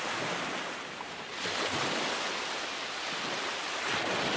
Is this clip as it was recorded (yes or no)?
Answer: yes